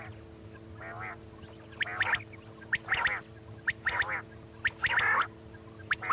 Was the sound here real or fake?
real